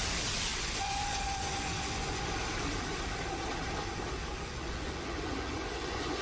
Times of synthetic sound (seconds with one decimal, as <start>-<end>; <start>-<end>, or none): 0.5-2.3; 4.3-6.2